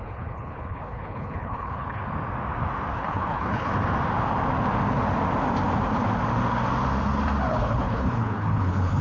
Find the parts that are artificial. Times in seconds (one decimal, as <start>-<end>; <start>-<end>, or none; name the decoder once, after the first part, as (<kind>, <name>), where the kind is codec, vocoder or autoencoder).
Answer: 0.0-2.0 (codec, HILCodec); 2.9-3.7; 7.5-9.0